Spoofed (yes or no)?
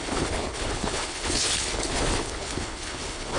yes